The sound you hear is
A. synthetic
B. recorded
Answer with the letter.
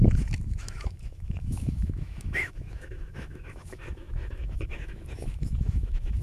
A